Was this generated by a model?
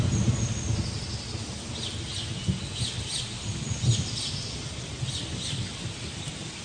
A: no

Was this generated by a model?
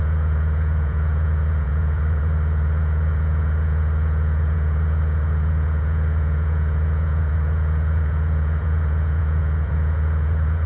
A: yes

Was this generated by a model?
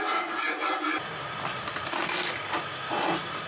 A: no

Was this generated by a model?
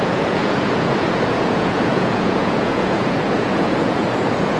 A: yes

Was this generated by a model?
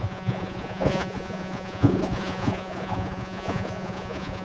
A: yes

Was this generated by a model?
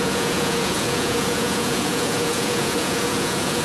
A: yes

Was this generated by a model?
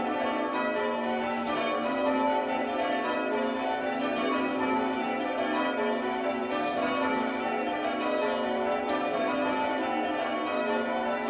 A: no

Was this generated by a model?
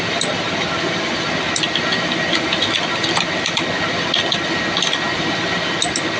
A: no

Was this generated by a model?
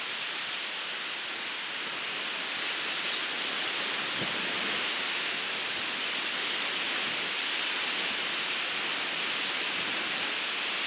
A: no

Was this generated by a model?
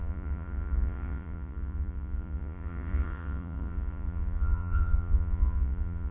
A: yes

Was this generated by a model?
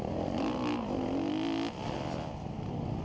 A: no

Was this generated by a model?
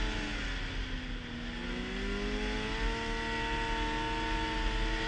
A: no